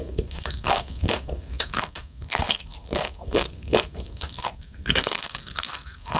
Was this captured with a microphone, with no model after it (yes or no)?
no